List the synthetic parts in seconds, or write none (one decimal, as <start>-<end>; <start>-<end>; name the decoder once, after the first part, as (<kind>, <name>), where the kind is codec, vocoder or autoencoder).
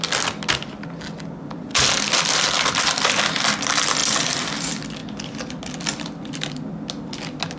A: none